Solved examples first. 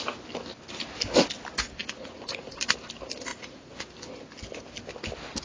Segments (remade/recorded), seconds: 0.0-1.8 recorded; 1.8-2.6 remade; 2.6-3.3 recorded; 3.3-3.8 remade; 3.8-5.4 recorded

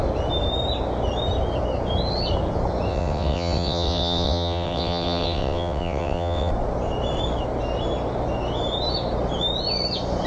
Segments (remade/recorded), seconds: 0.0-2.9 recorded; 2.9-6.5 remade; 6.5-10.3 recorded

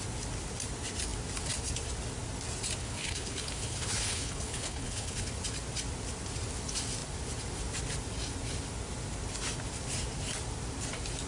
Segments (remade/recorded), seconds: 0.0-2.8 recorded; 2.8-5.3 remade; 5.3-11.3 recorded